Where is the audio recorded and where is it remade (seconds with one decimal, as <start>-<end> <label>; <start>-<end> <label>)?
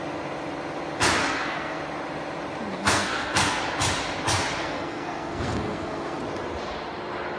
0.0-1.2 recorded; 1.2-1.8 remade; 1.8-2.7 recorded; 2.7-3.6 remade; 3.6-4.6 recorded; 4.6-6.2 remade; 6.2-7.4 recorded